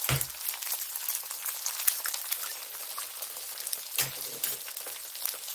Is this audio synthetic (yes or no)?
no